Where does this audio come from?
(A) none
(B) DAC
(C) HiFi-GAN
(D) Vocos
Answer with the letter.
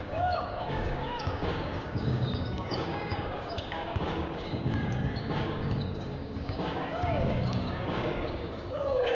B